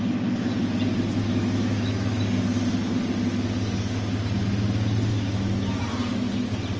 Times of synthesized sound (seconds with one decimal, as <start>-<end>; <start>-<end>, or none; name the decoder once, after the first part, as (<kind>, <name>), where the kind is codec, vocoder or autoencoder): 1.2-2.2 (autoencoder, DAC-VAE); 5.1-5.8